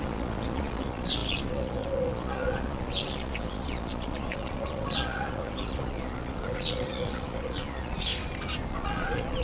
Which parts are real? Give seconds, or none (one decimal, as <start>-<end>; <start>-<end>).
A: 8.1-8.7